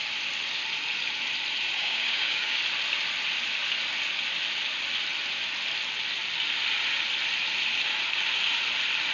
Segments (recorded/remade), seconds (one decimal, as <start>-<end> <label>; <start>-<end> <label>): 0.0-1.8 recorded; 1.8-2.6 remade; 2.6-9.1 recorded